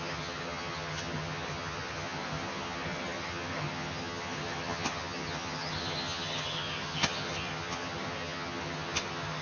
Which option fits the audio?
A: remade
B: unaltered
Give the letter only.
A